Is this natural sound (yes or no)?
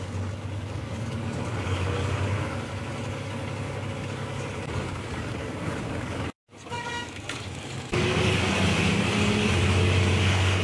no